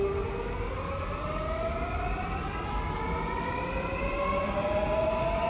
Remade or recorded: recorded